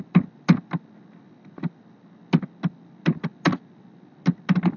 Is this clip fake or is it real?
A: real